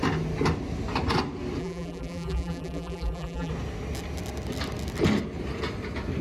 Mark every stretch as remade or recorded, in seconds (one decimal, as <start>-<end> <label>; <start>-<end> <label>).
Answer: 0.0-1.6 recorded; 1.6-3.5 remade; 3.5-6.2 recorded